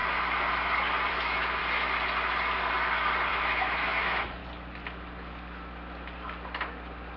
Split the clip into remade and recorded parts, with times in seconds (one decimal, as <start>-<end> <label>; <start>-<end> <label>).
0.0-1.1 recorded; 1.1-1.6 remade; 1.6-3.3 recorded; 3.3-4.4 remade; 4.4-7.2 recorded